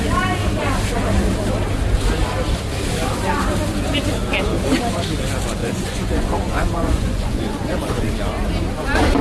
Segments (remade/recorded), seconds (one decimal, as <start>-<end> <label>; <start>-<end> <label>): 0.0-5.6 recorded; 5.6-8.1 remade; 8.1-9.2 recorded